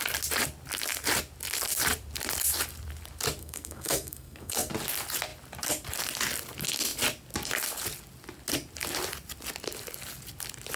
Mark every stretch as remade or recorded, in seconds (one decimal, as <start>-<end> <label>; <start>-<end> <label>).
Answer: 0.0-3.4 recorded; 3.4-4.7 remade; 4.7-10.8 recorded

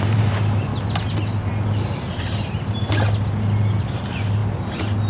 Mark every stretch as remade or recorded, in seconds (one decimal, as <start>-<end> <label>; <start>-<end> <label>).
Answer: 0.0-0.7 remade; 0.7-3.8 recorded; 3.8-4.4 remade; 4.4-5.1 recorded

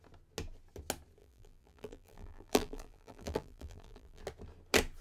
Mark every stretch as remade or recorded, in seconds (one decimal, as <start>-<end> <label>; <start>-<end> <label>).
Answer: 0.0-1.2 recorded; 1.2-4.2 remade; 4.2-5.0 recorded

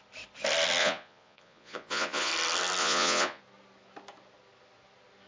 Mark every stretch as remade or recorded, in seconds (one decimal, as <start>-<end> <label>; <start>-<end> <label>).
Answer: 0.0-0.8 recorded; 0.8-2.3 remade; 2.3-2.8 recorded; 2.8-3.4 remade; 3.4-5.3 recorded

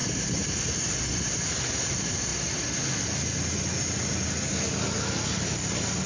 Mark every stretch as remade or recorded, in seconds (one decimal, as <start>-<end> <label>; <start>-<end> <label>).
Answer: 0.0-6.1 recorded

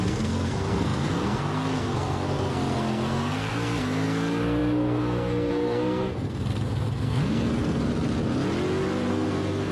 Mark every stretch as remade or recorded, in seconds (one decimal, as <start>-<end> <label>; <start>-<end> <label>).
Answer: 0.0-7.9 remade; 7.9-9.1 recorded; 9.1-9.7 remade

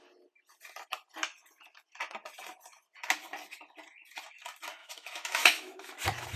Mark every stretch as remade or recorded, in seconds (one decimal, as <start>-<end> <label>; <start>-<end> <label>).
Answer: 0.0-4.8 recorded; 4.8-5.9 remade; 5.9-6.4 recorded

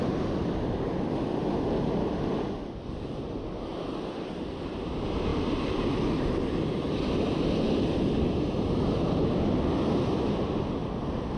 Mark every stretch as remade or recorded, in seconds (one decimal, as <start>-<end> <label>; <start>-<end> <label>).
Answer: 0.0-11.4 recorded